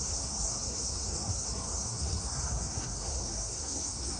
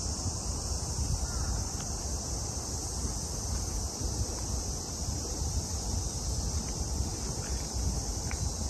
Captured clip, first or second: second